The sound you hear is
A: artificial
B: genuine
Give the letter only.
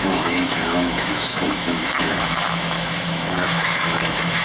A